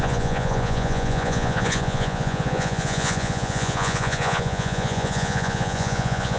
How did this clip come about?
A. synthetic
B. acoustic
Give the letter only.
A